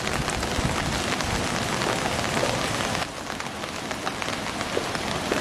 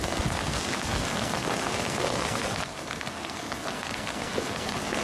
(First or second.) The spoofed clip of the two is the second